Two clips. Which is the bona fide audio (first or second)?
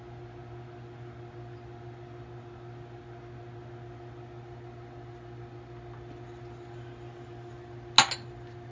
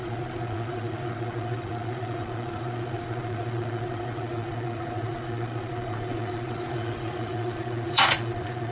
first